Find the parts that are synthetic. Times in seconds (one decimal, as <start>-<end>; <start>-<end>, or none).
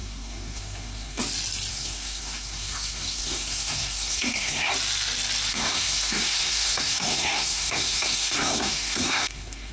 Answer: 0.0-1.2; 1.7-4.7; 5.5-9.7